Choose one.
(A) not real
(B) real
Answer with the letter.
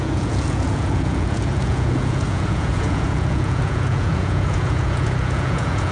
A